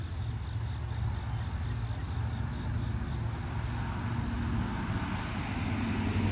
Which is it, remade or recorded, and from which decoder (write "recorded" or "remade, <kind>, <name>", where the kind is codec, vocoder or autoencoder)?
recorded